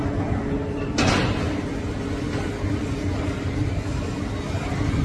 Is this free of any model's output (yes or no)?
yes